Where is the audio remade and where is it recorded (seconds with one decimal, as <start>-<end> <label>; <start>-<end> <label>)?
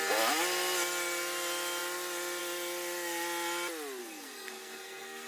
0.0-4.0 recorded; 4.0-5.3 remade